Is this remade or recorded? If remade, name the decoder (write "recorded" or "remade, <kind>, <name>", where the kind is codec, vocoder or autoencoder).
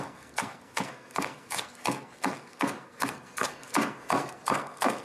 remade, codec, SNAC